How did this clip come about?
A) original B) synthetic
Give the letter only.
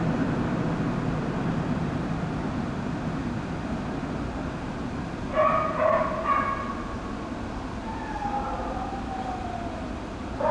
A